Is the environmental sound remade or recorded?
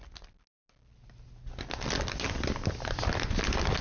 recorded